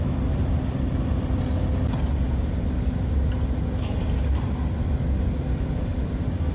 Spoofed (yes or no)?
no